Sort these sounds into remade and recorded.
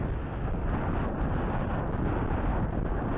recorded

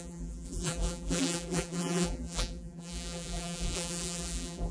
remade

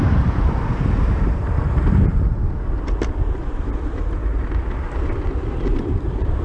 remade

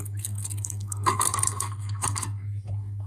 remade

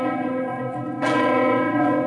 remade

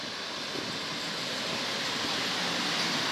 recorded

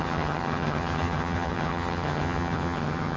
remade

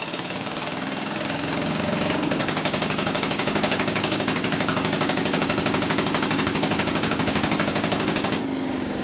remade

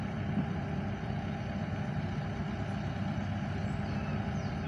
recorded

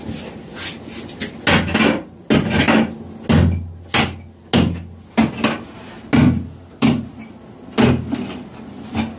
recorded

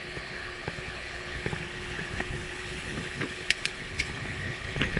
remade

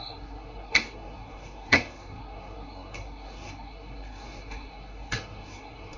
remade